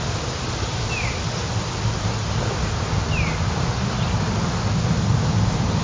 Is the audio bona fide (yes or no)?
yes